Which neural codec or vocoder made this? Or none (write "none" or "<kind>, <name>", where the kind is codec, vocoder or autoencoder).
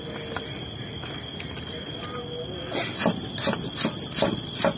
none